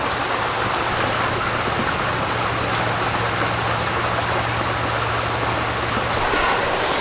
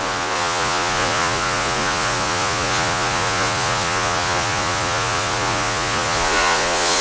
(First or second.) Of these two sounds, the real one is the first